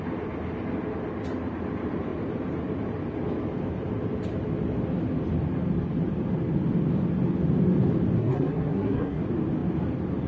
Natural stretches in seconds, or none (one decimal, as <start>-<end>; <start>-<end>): 0.0-8.2; 9.2-10.3